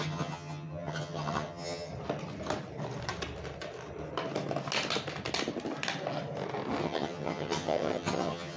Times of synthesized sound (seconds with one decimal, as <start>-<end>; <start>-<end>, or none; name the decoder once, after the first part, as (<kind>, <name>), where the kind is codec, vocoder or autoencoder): 0.0-1.9 (vocoder, HiFi-GAN); 6.8-8.6